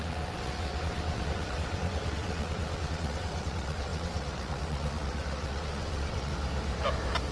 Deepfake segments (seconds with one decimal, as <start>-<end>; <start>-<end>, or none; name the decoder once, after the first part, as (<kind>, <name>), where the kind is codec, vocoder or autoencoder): 0.0-6.3 (vocoder, WaveNeXt)